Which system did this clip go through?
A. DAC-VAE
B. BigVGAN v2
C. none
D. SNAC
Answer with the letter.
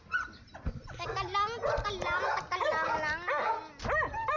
C